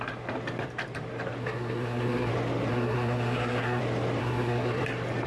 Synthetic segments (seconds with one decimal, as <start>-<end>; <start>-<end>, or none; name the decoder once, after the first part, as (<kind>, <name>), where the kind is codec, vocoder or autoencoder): 1.4-2.3 (codec, SNAC); 2.7-3.8; 4.2-4.8